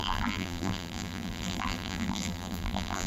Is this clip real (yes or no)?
no